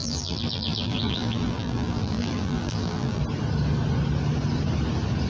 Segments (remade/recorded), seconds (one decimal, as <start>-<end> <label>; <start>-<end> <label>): 0.0-3.2 remade; 3.2-5.3 recorded